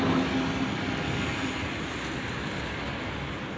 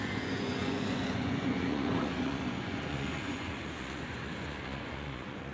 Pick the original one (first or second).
first